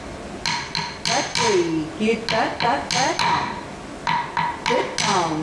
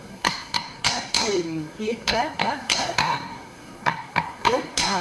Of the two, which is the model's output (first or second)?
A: second